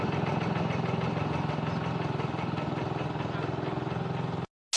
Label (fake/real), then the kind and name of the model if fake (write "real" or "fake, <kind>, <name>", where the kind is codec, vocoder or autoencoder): real